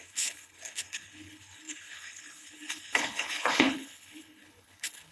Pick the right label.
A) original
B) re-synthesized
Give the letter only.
B